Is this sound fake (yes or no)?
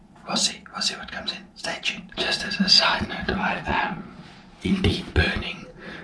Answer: yes